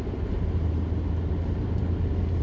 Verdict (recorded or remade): recorded